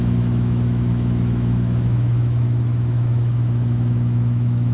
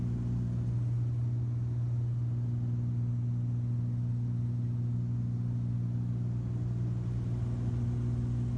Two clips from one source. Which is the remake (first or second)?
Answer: first